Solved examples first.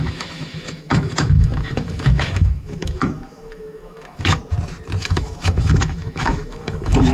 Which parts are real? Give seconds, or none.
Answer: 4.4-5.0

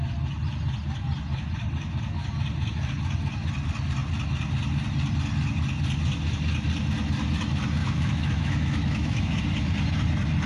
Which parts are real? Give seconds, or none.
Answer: 0.0-7.8; 9.4-10.5

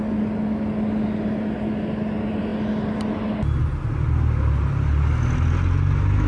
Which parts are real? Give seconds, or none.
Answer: 0.0-6.3

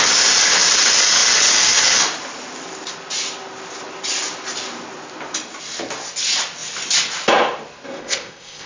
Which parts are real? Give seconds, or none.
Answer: 0.0-8.0

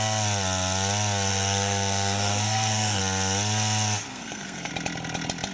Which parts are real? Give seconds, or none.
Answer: 0.0-1.3; 3.0-4.1; 4.7-5.5

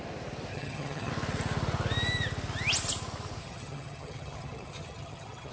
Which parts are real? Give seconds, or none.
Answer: 0.0-0.5; 1.1-3.4

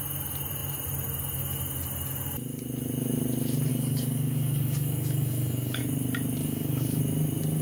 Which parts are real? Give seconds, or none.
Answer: 0.0-3.7; 5.8-6.4; 7.0-7.6